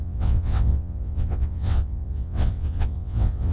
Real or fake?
fake